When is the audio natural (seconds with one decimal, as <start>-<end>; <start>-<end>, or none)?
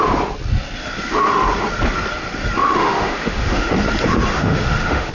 0.0-2.6; 3.7-4.3